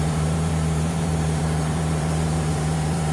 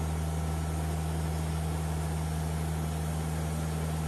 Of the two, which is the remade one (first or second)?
first